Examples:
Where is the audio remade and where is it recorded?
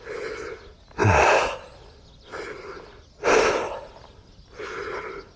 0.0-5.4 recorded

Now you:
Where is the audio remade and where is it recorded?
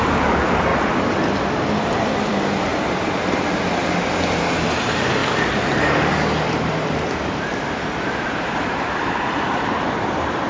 0.0-0.7 remade; 0.7-1.7 recorded; 1.7-2.7 remade; 2.7-4.4 recorded; 4.4-5.2 remade; 5.2-6.7 recorded; 6.7-10.5 remade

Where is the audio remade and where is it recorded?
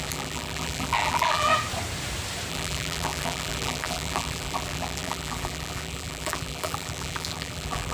0.0-1.5 remade; 1.5-2.5 recorded; 2.5-7.9 remade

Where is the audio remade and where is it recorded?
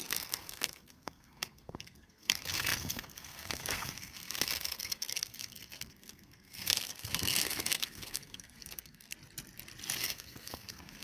0.0-9.1 remade; 9.1-10.0 recorded; 10.0-11.0 remade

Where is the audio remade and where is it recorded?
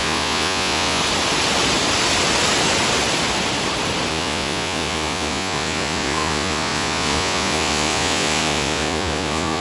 0.0-1.0 remade; 1.0-4.1 recorded; 4.1-9.6 remade